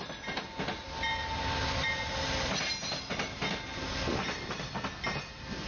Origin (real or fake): real